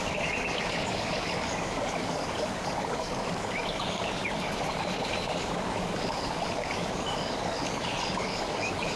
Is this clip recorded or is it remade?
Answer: remade